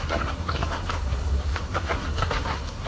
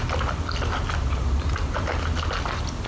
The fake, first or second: first